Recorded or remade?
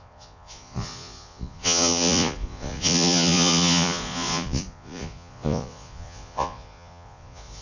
remade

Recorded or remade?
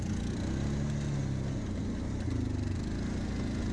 recorded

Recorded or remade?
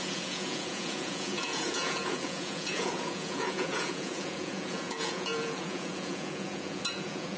remade